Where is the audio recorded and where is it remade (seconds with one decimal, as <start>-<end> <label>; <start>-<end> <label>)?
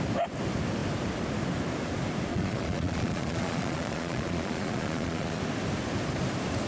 0.0-2.3 recorded; 2.3-5.4 remade; 5.4-6.7 recorded